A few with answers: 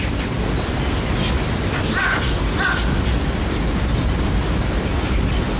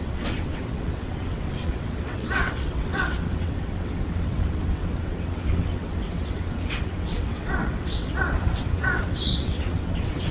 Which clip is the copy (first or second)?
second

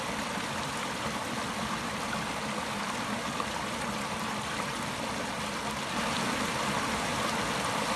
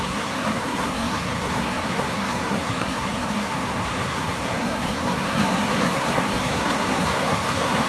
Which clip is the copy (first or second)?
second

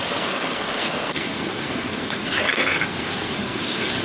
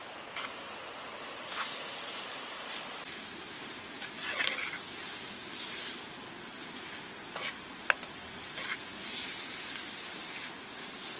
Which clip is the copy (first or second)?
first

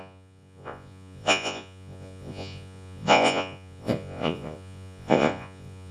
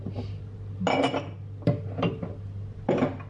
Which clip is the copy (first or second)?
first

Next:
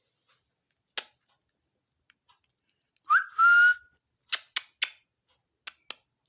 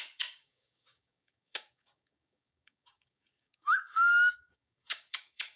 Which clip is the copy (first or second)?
second